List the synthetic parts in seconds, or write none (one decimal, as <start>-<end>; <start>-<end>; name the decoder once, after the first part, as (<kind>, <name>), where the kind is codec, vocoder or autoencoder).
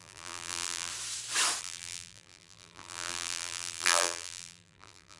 0.0-0.9 (vocoder, BigVGAN v2); 1.6-5.2